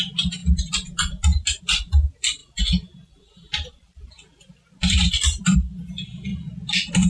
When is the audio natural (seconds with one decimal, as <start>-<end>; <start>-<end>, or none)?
0.4-1.6; 2.4-3.7; 6.3-7.1